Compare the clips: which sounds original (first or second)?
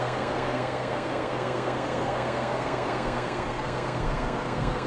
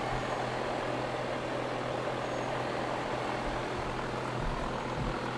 second